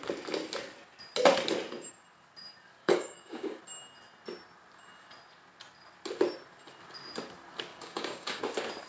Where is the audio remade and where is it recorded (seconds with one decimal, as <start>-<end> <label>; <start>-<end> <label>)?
0.0-2.8 recorded; 2.8-3.6 remade; 3.6-7.7 recorded; 7.7-8.4 remade; 8.4-8.9 recorded